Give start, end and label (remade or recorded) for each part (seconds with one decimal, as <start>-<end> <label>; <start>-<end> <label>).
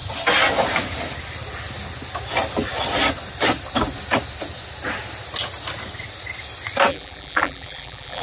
0.0-6.9 recorded; 6.9-8.2 remade